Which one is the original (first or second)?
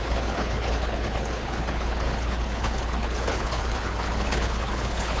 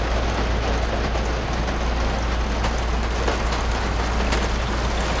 second